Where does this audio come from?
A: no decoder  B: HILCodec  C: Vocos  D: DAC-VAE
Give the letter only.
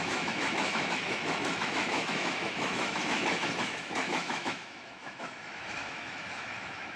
D